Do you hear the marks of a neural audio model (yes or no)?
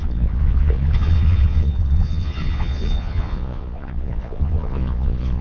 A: yes